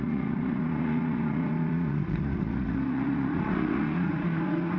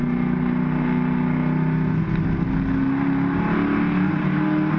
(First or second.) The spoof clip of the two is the first